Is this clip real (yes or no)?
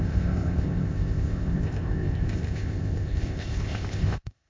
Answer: no